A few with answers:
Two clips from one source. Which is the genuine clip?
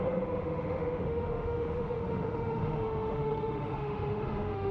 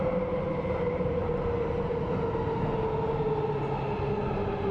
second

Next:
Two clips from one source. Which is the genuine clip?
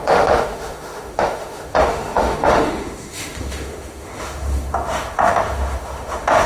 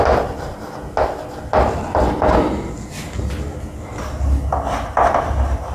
second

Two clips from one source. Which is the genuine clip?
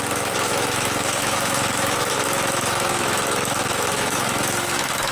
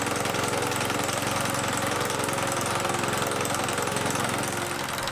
second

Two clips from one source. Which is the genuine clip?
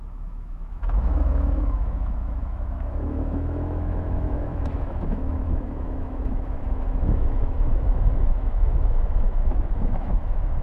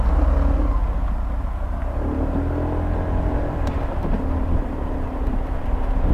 second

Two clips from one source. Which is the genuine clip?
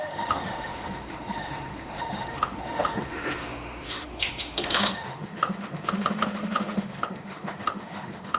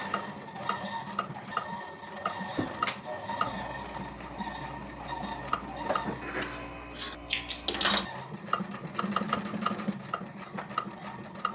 second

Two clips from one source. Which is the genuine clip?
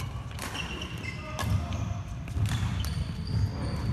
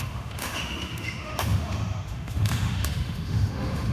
first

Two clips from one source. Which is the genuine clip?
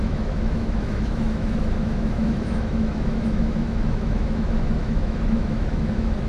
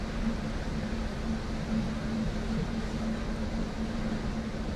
second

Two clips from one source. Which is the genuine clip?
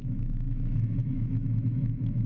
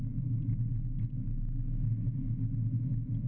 second